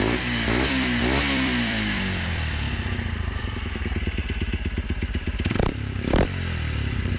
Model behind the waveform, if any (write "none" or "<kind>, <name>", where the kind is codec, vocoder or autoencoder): vocoder, BigVGAN v2